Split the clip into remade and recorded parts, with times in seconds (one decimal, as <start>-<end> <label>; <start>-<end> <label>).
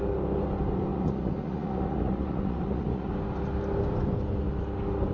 0.0-0.9 recorded; 0.9-3.1 remade; 3.1-5.1 recorded